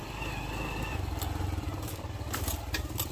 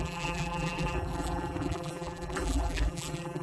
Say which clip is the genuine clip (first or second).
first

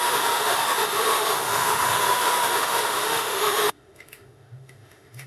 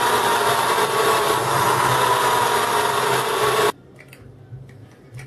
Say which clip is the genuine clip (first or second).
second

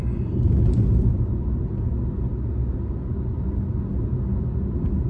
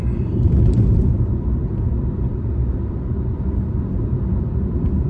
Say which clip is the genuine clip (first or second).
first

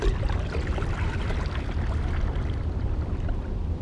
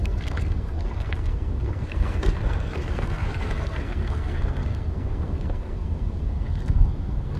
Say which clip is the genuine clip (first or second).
first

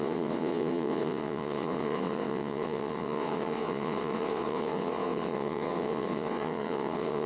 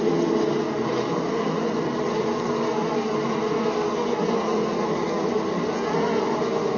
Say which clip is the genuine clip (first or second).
second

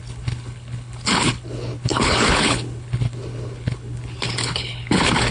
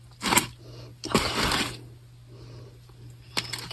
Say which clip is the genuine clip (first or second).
second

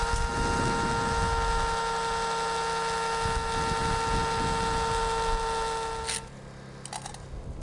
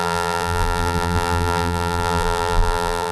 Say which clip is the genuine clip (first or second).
first